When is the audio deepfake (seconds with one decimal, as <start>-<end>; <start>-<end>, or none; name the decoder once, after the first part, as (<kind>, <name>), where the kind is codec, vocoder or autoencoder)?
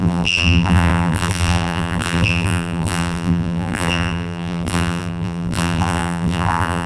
0.0-6.9 (vocoder, BigVGAN v2)